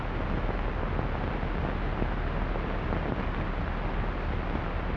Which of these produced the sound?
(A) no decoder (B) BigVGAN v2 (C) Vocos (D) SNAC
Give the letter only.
A